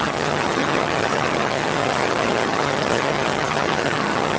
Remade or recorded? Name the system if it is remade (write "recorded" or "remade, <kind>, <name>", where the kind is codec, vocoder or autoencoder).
remade, vocoder, HiFi-GAN